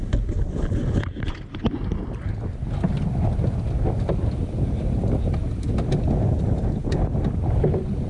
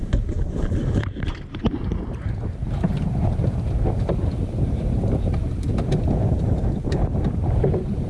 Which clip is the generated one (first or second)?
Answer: second